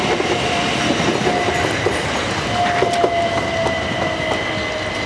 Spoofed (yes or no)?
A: no